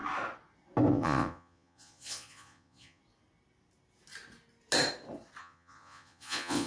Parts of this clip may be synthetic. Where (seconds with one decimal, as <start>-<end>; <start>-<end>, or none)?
0.9-3.0; 5.4-6.7